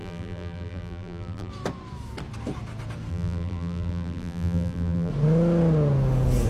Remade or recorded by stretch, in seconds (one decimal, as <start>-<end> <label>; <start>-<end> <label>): 0.0-1.5 remade; 1.5-3.1 recorded; 3.1-5.1 remade; 5.1-6.5 recorded